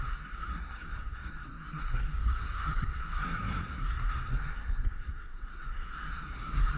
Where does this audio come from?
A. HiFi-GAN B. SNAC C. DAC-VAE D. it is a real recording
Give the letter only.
B